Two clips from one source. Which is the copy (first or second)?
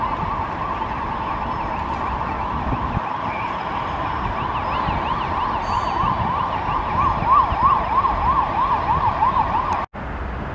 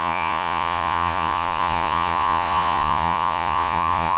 second